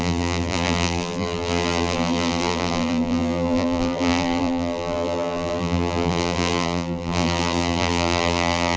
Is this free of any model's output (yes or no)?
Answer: no